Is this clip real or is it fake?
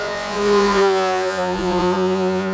fake